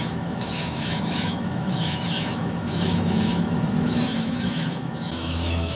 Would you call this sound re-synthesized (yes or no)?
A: yes